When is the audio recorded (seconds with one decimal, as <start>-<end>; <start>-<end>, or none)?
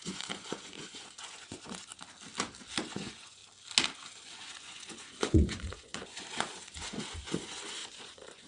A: 1.9-2.8; 3.4-4.3